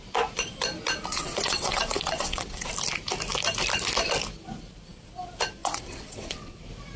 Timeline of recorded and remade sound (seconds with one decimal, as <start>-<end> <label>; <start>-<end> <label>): 0.0-1.1 recorded; 1.1-2.7 remade; 2.7-5.6 recorded; 5.6-6.6 remade; 6.6-7.0 recorded

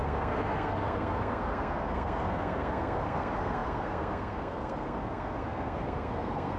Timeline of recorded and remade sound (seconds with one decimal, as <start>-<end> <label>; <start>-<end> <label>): 0.0-6.6 remade

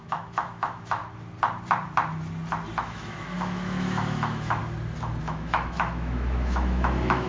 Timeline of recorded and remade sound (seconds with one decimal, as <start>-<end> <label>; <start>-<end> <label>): 0.0-1.0 remade; 1.0-2.8 recorded; 2.8-4.6 remade; 4.6-5.2 recorded; 5.2-7.3 remade

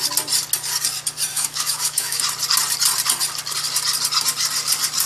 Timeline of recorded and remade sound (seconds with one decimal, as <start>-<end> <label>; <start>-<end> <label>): 0.0-1.3 recorded; 1.3-2.2 remade; 2.2-5.1 recorded

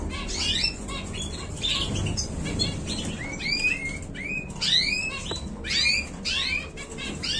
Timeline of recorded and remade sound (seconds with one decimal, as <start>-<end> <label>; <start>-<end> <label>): 0.0-0.6 recorded; 0.6-1.2 remade; 1.2-7.4 recorded